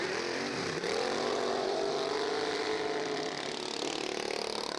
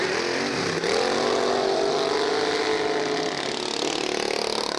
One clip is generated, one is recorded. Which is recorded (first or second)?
second